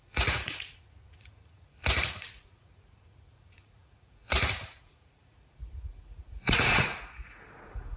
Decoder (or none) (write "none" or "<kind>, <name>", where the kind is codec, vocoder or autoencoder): vocoder, Vocos